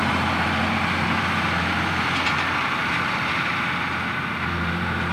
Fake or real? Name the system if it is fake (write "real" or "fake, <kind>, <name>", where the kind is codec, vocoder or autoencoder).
fake, vocoder, BigVGAN v2